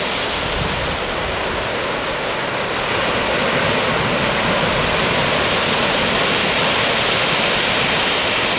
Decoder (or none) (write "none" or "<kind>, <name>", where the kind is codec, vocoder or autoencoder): none